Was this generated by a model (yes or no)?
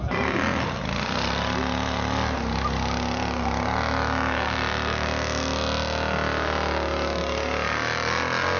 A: no